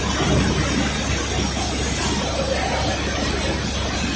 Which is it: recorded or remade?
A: recorded